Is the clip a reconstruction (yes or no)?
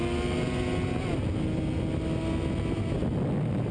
no